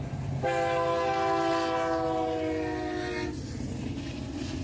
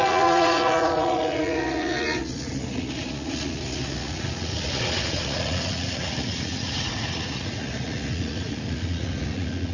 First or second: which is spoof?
second